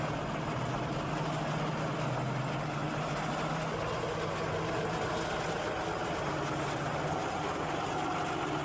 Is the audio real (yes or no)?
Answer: yes